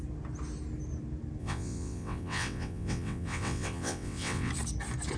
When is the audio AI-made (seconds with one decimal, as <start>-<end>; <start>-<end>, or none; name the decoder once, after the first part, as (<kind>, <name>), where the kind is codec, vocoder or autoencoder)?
1.4-4.5 (vocoder, WaveNeXt)